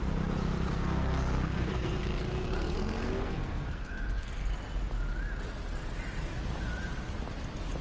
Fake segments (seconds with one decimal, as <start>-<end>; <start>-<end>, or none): 0.7-4.5